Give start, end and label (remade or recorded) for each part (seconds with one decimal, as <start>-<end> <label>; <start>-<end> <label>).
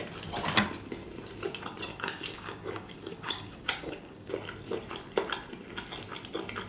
0.0-1.9 recorded; 1.9-4.3 remade; 4.3-6.7 recorded